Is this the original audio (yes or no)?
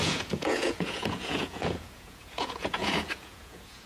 no